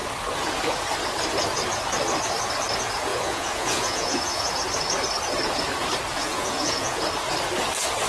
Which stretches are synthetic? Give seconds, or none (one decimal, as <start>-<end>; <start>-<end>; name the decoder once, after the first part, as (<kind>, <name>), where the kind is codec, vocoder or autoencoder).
3.1-4.5 (vocoder, Vocos); 6.2-7.0